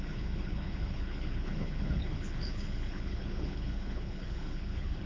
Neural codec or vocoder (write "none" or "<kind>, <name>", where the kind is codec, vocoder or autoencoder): codec, HILCodec